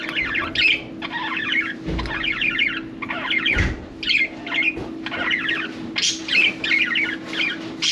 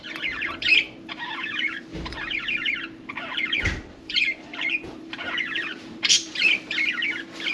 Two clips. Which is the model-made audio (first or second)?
second